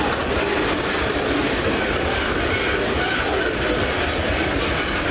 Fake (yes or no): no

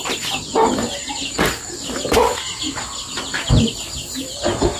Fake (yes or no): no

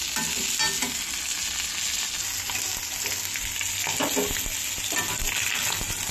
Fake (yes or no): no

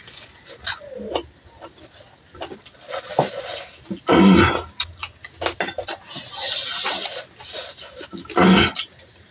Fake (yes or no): no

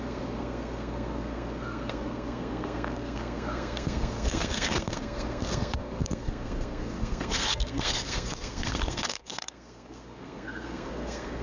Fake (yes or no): yes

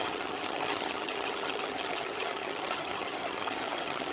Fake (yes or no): yes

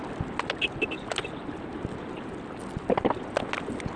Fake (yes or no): no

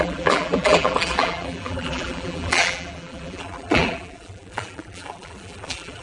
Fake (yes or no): yes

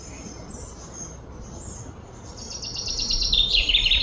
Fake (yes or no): no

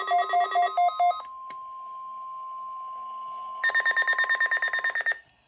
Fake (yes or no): no